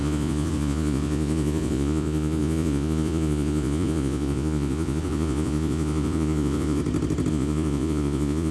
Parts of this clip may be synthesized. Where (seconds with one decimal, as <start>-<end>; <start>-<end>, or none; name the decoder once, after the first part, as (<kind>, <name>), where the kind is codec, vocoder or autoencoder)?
0.0-6.8 (vocoder, Vocos); 7.3-8.5

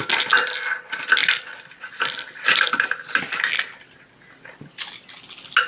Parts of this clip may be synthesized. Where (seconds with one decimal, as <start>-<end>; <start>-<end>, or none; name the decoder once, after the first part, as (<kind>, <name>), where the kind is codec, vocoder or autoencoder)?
none

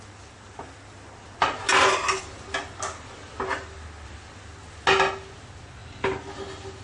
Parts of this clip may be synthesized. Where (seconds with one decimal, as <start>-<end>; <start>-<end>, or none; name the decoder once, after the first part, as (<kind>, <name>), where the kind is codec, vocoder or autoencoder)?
5.8-6.3 (vocoder, BigVGAN v2)

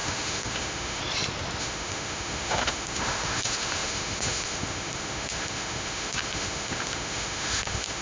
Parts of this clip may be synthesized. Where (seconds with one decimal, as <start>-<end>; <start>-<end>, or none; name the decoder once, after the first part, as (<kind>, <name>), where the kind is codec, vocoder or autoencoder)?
0.0-1.0 (autoencoder, DAC-VAE); 1.6-8.0

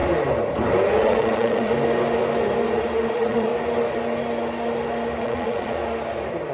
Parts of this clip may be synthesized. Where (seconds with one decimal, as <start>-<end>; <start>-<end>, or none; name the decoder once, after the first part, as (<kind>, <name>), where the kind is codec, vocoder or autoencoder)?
1.0-1.7 (vocoder, Vocos); 3.1-3.5; 5.2-5.8

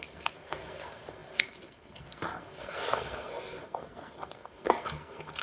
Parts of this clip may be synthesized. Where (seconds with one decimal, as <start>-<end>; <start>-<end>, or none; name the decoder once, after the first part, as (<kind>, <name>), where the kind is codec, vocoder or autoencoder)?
0.0-5.4 (codec, SNAC)

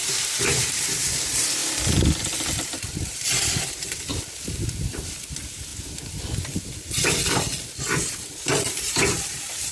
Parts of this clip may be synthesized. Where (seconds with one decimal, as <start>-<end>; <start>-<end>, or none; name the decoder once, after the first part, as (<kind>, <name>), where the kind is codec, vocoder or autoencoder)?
0.0-1.6 (vocoder, BigVGAN v2); 4.8-5.7; 8.2-9.7